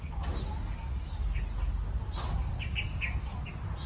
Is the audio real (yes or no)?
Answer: yes